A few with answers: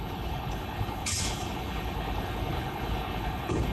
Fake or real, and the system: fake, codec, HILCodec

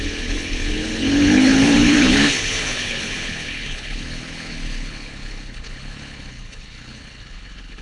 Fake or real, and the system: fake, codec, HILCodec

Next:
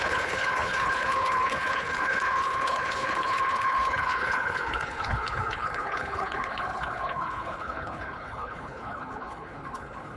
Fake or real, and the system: fake, codec, HILCodec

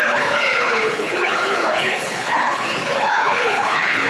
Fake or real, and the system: fake, codec, HILCodec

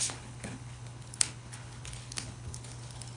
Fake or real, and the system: fake, codec, HILCodec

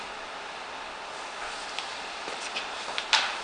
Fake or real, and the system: real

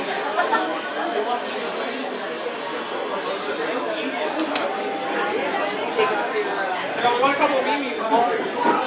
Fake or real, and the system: real